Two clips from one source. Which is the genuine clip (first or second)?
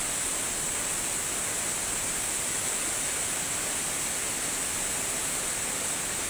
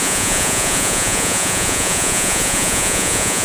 first